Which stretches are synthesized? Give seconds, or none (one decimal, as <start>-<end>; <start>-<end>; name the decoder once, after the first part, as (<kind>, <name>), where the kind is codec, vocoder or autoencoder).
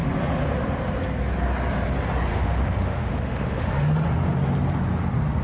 2.3-3.7 (autoencoder, DAC-VAE)